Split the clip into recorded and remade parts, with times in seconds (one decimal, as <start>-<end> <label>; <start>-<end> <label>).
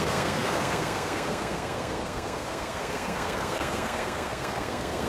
0.0-5.1 remade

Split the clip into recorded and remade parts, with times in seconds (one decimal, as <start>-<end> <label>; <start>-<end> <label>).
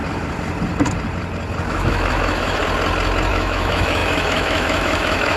0.0-1.7 recorded; 1.7-2.6 remade; 2.6-3.3 recorded; 3.3-5.4 remade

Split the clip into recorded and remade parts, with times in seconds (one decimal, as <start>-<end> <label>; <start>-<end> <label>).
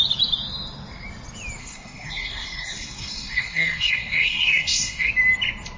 0.0-1.6 recorded; 1.6-5.1 remade; 5.1-5.8 recorded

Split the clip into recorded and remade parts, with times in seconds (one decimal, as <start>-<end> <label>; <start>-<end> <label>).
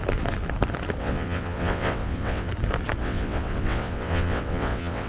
0.0-1.0 recorded; 1.0-2.5 remade; 2.5-3.0 recorded; 3.0-5.1 remade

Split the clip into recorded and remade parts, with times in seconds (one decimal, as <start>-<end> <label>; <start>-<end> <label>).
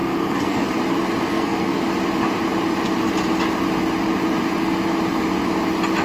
0.0-0.7 remade; 0.7-1.3 recorded; 1.3-1.8 remade; 1.8-6.0 recorded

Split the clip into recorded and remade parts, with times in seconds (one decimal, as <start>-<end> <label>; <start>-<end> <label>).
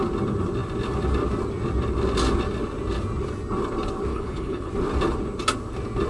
0.0-4.1 recorded; 4.1-4.7 remade; 4.7-6.1 recorded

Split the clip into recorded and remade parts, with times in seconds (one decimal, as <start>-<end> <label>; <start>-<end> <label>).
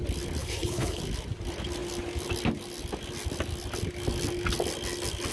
0.0-0.4 recorded; 0.4-1.0 remade; 1.0-5.3 recorded